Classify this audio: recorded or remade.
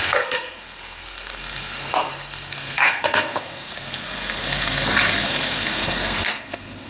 remade